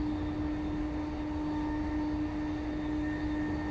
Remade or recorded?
recorded